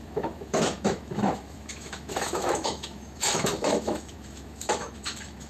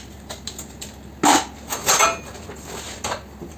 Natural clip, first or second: second